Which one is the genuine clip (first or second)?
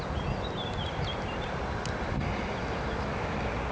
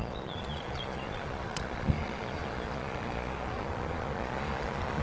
first